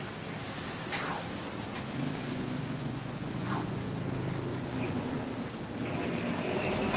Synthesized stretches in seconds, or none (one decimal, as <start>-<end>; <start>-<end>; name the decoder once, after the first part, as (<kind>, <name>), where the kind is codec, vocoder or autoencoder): 2.2-3.9 (vocoder, Vocos); 4.5-5.1